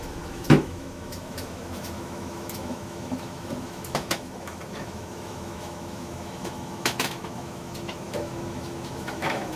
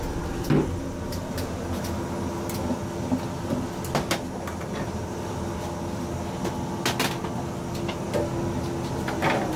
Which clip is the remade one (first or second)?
first